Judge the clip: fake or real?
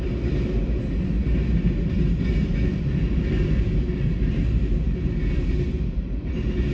real